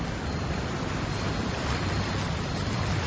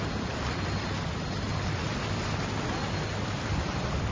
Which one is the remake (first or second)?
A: first